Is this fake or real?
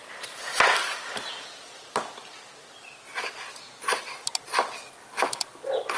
real